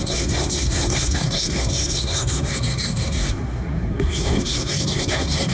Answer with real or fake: fake